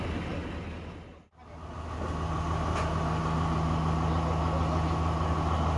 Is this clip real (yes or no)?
yes